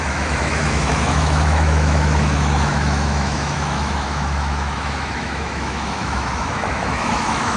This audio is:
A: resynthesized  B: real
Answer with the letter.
A